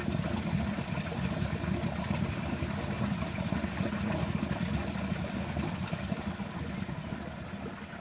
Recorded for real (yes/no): yes